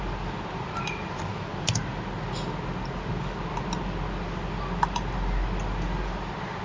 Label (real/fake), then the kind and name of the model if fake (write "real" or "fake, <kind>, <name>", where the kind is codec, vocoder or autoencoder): real